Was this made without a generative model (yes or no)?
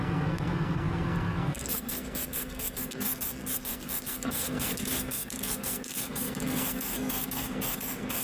no